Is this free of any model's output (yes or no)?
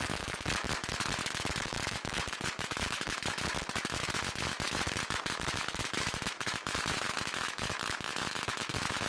no